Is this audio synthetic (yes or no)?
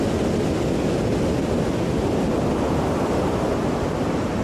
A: no